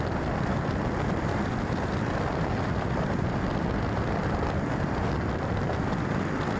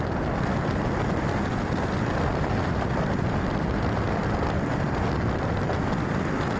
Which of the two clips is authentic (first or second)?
second